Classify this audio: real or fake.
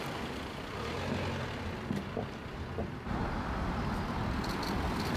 real